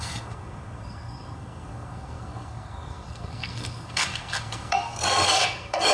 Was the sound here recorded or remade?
remade